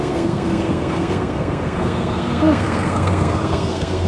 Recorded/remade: remade